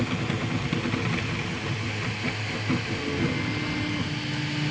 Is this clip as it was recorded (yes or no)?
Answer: yes